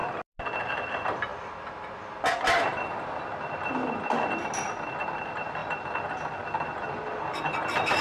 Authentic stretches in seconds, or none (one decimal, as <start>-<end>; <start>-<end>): 0.0-8.0